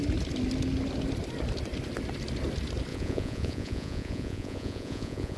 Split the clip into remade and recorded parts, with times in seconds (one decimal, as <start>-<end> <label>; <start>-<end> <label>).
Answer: 0.0-2.9 recorded; 2.9-5.4 remade